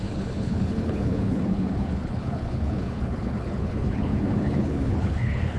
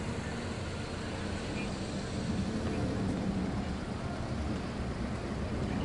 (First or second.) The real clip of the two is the second